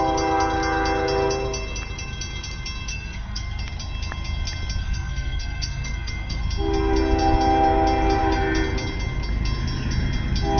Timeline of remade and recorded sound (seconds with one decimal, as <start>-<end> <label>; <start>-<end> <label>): 0.0-2.9 recorded; 2.9-3.6 remade; 3.6-4.8 recorded; 4.8-6.4 remade; 6.4-10.6 recorded